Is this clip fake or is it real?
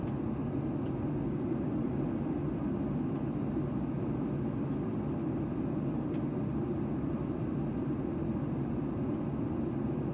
real